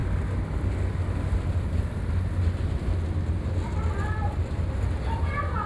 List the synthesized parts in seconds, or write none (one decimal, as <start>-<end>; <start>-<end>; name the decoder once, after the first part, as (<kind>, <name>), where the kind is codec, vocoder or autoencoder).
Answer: none